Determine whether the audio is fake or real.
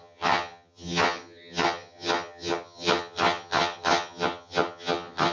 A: fake